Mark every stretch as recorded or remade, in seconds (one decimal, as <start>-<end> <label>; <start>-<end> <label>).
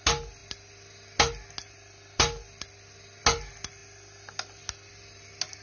0.0-5.6 recorded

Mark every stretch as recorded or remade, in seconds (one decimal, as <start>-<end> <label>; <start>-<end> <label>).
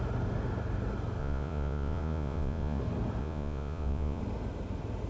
0.0-1.2 recorded; 1.2-2.8 remade; 2.8-3.2 recorded; 3.2-4.2 remade; 4.2-5.1 recorded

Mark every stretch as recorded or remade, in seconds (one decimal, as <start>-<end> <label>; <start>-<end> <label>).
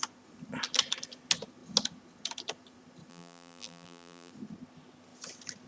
0.0-3.1 recorded; 3.1-4.3 remade; 4.3-5.7 recorded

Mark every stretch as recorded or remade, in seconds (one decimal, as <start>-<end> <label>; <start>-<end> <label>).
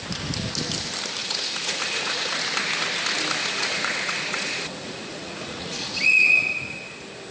0.0-1.2 recorded; 1.2-2.4 remade; 2.4-3.4 recorded; 3.4-6.4 remade; 6.4-7.3 recorded